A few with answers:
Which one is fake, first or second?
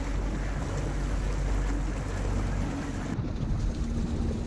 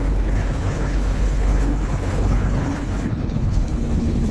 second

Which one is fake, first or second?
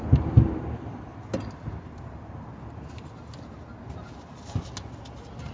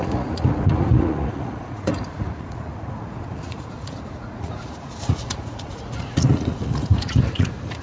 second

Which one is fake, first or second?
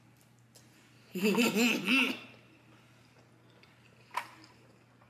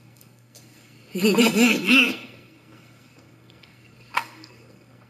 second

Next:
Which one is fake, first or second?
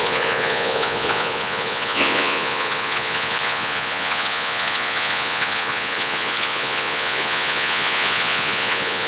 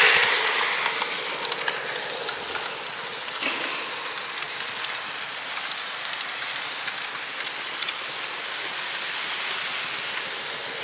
first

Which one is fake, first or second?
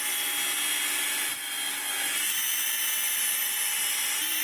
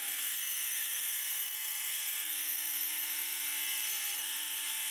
second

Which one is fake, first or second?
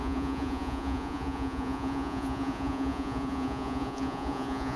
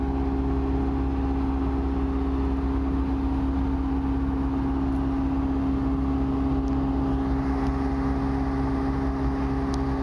first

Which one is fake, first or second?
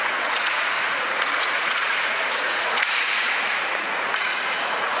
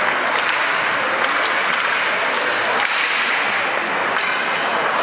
first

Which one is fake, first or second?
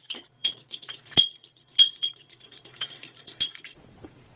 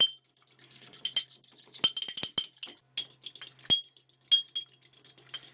first